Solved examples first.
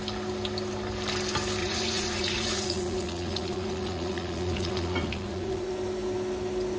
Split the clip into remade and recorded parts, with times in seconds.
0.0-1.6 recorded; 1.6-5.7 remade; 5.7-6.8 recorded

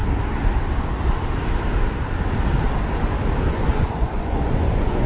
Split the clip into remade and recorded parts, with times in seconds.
0.0-3.5 recorded; 3.5-5.1 remade